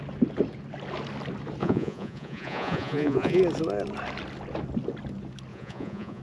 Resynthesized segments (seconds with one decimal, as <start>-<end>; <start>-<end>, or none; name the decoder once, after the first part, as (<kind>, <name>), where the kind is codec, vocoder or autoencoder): 1.6-3.4 (vocoder, Vocos); 5.5-6.2